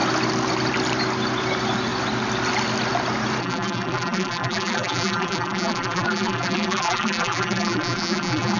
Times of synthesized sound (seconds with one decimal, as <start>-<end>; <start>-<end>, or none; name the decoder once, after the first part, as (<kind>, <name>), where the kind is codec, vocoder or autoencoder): 3.4-8.6 (vocoder, BigVGAN v2)